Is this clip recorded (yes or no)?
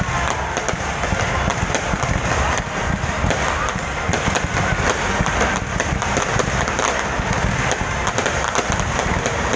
yes